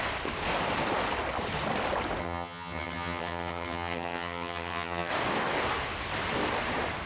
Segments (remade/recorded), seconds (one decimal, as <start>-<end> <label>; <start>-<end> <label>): 0.0-2.2 recorded; 2.2-5.1 remade; 5.1-7.1 recorded